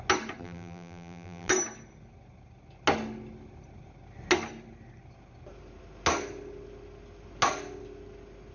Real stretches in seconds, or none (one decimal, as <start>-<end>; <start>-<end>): 0.0-0.4; 1.5-8.5